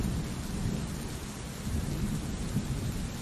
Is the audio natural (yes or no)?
yes